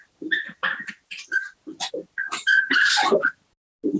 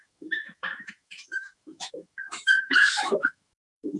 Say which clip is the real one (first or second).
first